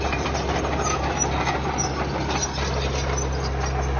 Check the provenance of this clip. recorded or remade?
recorded